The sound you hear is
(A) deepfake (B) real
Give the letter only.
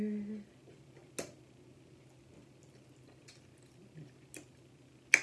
B